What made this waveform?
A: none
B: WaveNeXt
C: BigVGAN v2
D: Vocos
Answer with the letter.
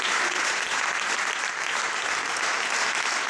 A